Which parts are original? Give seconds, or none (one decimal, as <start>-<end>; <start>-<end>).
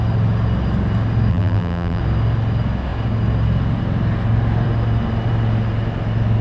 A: 0.0-1.3; 2.0-6.4